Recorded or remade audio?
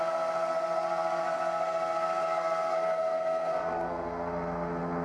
remade